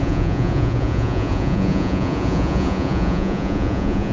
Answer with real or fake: fake